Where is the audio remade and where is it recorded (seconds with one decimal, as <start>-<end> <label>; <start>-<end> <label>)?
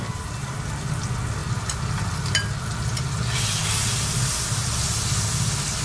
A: 0.0-5.8 recorded